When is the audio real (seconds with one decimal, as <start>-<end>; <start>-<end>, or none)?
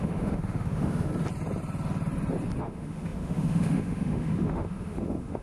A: 1.1-2.6